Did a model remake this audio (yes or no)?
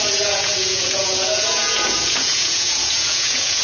yes